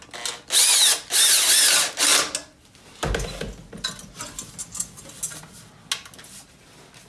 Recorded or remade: recorded